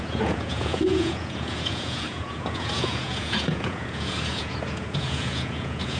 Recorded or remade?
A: remade